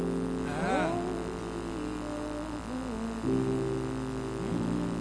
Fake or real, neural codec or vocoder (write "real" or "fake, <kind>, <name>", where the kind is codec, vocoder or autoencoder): real